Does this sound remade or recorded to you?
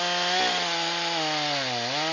recorded